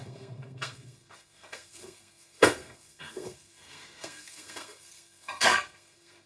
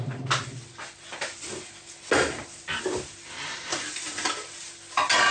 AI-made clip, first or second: first